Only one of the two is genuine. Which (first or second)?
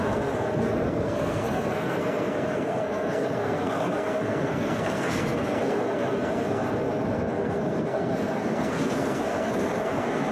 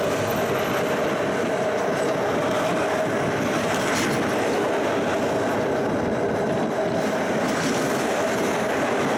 second